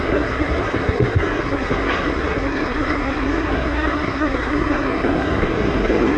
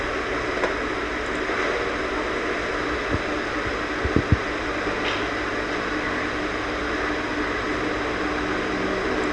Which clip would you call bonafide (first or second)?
second